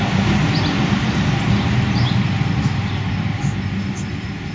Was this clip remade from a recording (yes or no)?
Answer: no